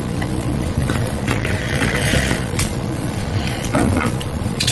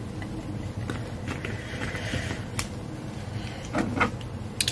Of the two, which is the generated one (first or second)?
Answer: first